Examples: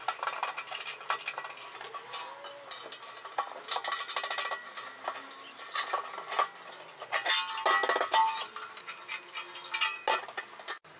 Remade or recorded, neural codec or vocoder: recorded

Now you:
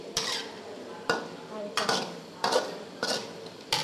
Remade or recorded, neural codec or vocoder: remade, vocoder, BigVGAN v2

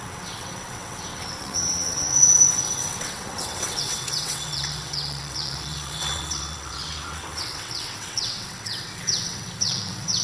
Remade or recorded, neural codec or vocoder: remade, vocoder, WaveNeXt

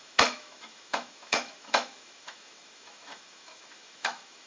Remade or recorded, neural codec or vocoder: remade, autoencoder, DAC-VAE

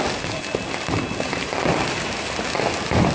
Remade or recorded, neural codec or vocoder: recorded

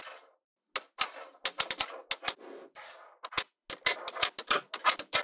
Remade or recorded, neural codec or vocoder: recorded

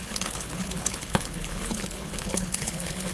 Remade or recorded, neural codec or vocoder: remade, codec, HILCodec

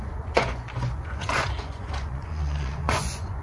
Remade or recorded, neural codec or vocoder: remade, vocoder, Vocos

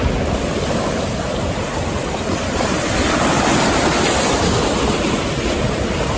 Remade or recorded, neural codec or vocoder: recorded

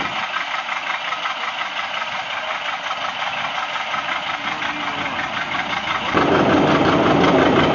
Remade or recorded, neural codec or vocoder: recorded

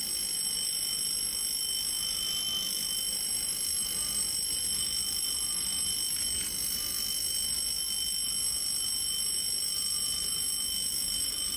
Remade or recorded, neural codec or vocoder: recorded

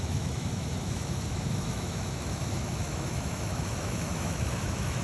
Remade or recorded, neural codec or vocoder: remade, autoencoder, DAC-VAE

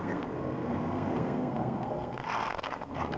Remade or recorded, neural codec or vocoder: remade, codec, SNAC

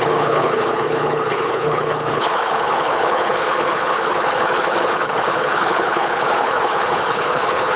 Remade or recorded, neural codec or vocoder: remade, codec, HILCodec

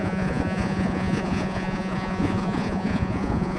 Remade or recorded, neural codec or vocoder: remade, vocoder, Vocos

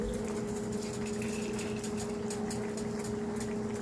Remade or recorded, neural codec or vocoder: recorded